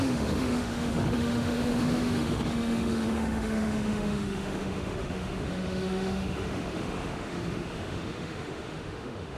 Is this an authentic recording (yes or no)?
no